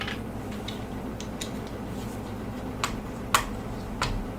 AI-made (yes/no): no